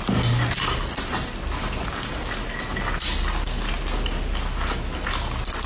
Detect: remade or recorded recorded